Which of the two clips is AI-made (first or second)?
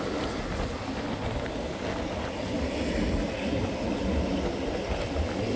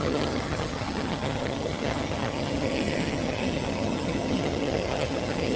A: second